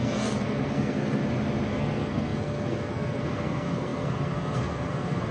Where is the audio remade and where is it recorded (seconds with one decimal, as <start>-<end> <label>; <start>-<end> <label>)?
0.0-1.2 remade; 1.2-1.7 recorded; 1.7-5.3 remade